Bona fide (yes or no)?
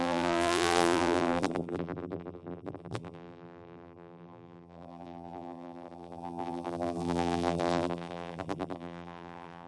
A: no